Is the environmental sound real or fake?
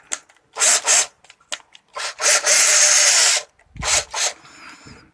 real